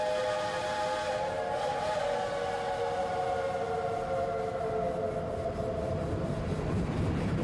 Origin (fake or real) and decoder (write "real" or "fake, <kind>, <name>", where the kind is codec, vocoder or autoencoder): real